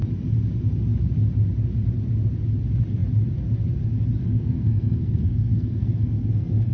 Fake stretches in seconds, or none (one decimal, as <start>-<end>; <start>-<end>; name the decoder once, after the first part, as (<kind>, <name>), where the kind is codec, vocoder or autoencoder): 4.2-6.7 (codec, SNAC)